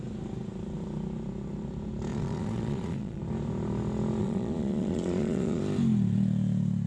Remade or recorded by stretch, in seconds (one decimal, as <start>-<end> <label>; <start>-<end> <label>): 0.0-2.1 recorded; 2.1-3.2 remade; 3.2-4.2 recorded; 4.2-5.6 remade; 5.6-6.9 recorded